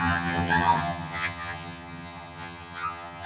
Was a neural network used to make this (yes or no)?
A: yes